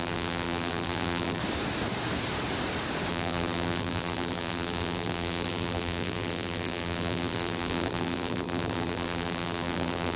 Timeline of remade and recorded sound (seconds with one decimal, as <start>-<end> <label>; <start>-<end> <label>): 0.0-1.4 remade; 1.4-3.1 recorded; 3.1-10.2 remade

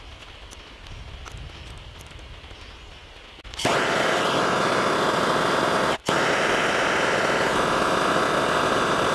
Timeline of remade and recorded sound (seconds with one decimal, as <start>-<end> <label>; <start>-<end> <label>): 0.0-9.1 recorded

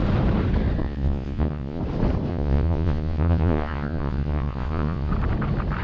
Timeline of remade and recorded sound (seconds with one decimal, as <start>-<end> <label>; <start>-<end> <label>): 0.0-0.8 recorded; 0.8-1.8 remade; 1.8-2.3 recorded; 2.3-5.1 remade; 5.1-5.8 recorded

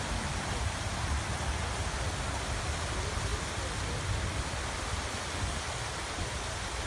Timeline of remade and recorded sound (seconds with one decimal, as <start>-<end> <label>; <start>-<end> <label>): 0.0-6.9 recorded